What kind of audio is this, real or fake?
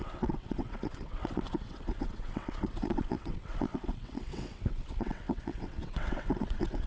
fake